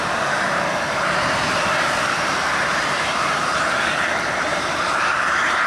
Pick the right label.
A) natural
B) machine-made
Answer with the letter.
B